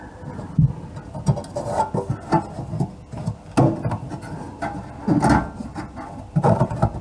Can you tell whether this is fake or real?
real